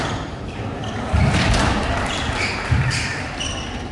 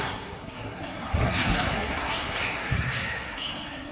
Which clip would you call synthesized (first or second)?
second